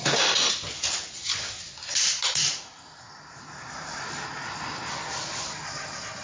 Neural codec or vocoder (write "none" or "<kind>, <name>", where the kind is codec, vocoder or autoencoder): none